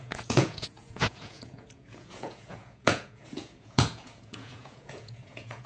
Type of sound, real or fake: fake